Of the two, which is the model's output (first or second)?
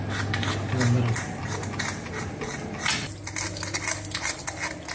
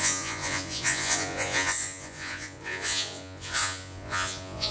second